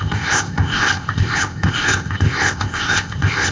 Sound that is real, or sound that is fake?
fake